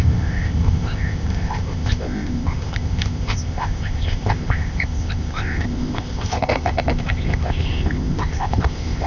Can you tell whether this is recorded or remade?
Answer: remade